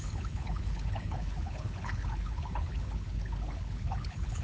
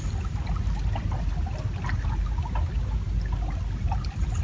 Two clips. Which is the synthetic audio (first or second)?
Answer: first